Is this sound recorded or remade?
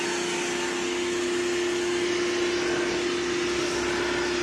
recorded